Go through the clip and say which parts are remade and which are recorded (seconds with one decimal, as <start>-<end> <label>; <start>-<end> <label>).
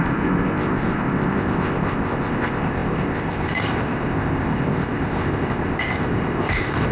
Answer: 0.0-6.9 remade